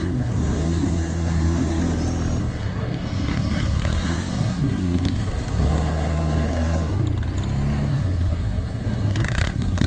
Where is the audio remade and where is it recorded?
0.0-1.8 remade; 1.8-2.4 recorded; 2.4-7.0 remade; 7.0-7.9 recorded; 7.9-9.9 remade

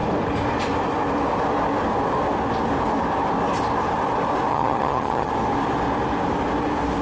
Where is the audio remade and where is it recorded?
0.0-4.5 recorded; 4.5-5.3 remade; 5.3-7.0 recorded

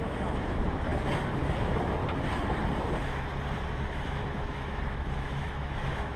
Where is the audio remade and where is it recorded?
0.0-0.6 remade; 0.6-1.6 recorded; 1.6-2.0 remade; 2.0-3.7 recorded; 3.7-6.2 remade

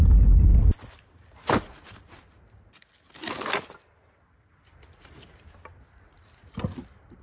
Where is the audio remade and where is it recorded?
0.0-7.2 recorded

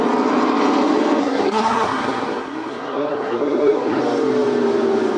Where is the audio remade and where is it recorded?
0.0-1.2 recorded; 1.2-4.0 remade; 4.0-5.2 recorded